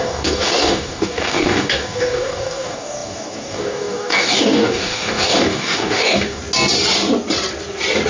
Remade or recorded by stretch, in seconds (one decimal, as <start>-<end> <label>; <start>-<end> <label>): 0.0-6.4 remade; 6.4-8.1 recorded